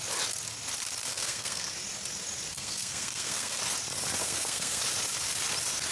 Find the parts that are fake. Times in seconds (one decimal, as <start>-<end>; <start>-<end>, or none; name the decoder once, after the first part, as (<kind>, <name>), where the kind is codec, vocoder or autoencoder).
1.1-1.7 (codec, SNAC); 2.5-3.6; 4.2-4.8